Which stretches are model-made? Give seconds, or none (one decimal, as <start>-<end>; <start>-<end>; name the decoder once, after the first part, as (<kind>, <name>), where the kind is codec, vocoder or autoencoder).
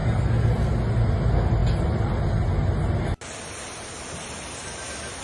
none